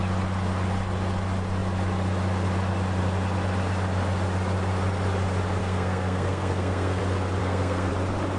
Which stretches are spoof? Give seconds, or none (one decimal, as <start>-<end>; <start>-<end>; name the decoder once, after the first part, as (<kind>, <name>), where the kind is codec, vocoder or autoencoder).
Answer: 5.6-7.0 (codec, SNAC); 7.4-7.9